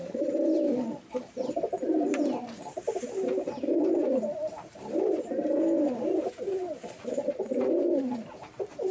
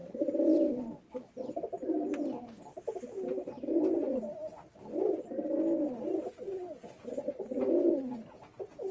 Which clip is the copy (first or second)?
first